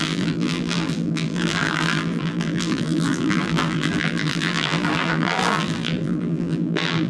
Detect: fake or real fake